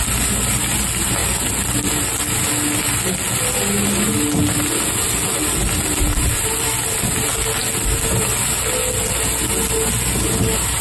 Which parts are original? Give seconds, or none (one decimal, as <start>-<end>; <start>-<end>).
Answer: 0.0-10.8